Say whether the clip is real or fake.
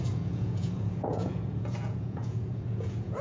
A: fake